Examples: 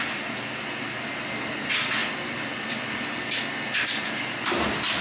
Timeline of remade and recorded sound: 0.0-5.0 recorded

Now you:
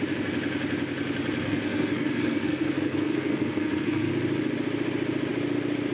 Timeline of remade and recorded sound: 0.0-1.4 recorded; 1.4-4.1 remade; 4.1-5.9 recorded

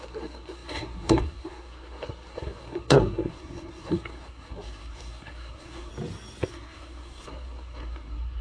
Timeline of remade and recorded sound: 0.0-5.9 remade; 5.9-6.5 recorded; 6.5-8.4 remade